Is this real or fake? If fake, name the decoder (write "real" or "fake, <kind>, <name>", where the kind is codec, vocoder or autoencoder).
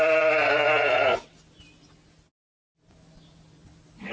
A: real